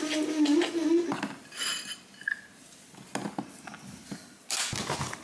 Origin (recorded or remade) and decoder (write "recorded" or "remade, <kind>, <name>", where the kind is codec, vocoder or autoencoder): recorded